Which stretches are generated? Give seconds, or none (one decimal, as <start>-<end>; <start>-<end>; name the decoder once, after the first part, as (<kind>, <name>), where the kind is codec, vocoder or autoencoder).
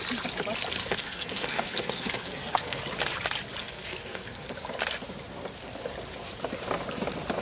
0.8-2.8 (codec, SNAC); 3.6-4.5